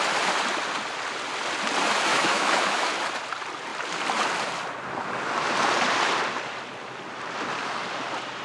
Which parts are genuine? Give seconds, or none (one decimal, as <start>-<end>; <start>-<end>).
0.0-2.1; 2.9-8.4